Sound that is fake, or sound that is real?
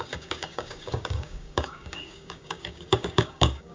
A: fake